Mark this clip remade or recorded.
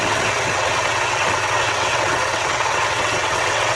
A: remade